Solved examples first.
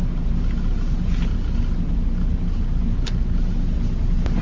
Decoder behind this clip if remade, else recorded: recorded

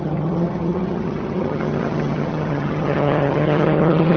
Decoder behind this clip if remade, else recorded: remade, vocoder, HiFi-GAN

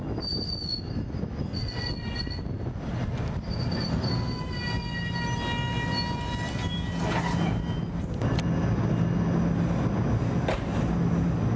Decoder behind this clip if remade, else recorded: recorded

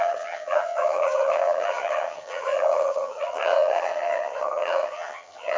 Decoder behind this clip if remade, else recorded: remade, vocoder, HiFi-GAN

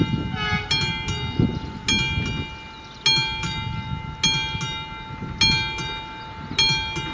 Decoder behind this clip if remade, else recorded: recorded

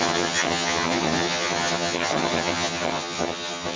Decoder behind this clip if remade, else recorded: remade, vocoder, HiFi-GAN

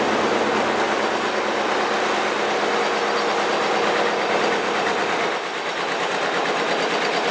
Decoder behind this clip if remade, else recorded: recorded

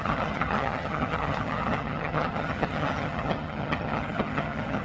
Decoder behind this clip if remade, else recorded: remade, vocoder, HiFi-GAN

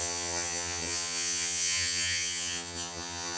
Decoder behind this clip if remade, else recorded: remade, vocoder, HiFi-GAN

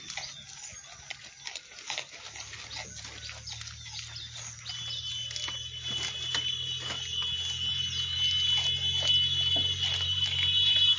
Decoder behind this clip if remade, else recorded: recorded